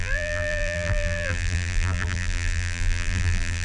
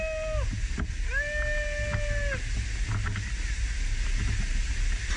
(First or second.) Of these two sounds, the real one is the second